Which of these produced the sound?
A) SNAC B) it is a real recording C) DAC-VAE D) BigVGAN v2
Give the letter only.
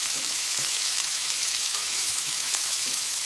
C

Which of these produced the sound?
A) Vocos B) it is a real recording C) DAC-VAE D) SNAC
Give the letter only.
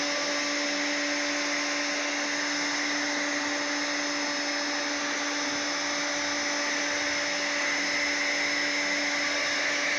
B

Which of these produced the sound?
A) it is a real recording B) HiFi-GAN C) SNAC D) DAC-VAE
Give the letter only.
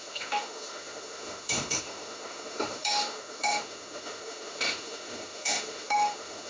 D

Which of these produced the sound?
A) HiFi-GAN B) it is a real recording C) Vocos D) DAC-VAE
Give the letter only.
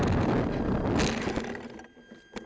B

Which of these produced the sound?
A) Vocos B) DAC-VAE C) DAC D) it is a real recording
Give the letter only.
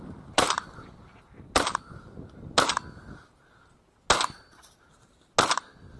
D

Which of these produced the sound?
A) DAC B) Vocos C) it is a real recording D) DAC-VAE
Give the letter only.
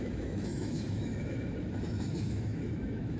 D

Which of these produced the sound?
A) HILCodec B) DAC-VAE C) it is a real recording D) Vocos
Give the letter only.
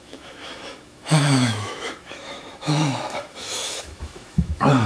B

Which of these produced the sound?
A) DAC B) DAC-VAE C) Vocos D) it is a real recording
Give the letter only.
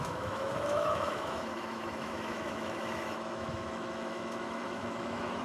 B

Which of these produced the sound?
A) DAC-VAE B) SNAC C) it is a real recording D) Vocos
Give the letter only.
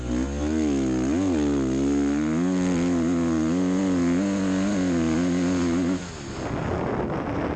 C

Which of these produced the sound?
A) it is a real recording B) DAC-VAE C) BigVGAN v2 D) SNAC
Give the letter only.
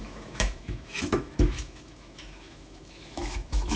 B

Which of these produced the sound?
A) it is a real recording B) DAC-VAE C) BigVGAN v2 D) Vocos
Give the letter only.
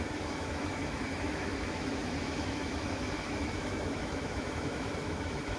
B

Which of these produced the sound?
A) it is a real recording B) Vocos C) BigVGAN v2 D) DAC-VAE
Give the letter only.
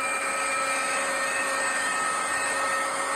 D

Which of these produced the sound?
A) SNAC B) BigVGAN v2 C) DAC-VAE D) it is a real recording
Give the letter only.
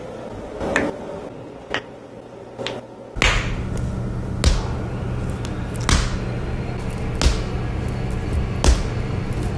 D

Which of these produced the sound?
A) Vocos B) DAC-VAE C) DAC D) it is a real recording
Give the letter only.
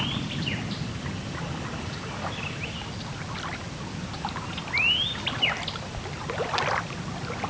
D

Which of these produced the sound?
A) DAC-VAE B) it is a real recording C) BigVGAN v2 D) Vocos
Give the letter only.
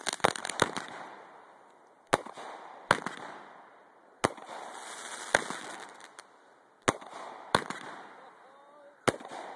B